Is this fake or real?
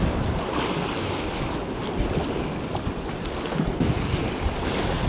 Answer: real